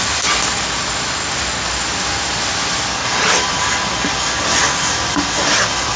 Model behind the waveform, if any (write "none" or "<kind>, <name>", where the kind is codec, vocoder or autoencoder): none